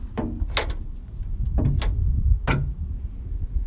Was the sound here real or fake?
real